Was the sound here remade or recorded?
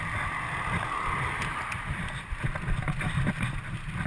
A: recorded